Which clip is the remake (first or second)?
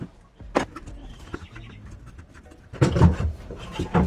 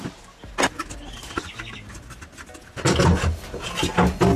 first